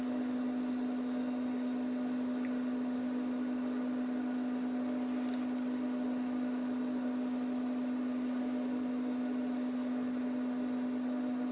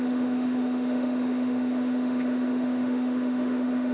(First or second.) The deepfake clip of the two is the second